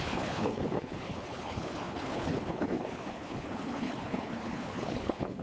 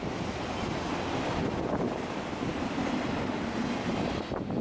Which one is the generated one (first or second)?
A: first